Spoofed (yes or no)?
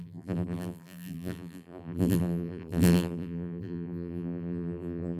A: yes